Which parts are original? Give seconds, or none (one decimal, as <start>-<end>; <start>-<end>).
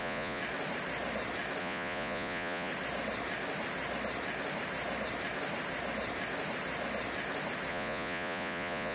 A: 0.4-1.6; 2.7-7.7